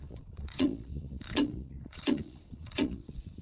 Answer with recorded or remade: remade